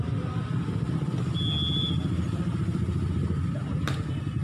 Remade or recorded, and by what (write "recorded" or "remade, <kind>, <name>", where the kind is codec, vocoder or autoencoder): recorded